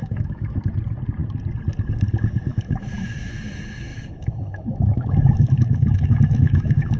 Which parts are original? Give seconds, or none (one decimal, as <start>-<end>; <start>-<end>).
0.6-2.5; 3.4-3.9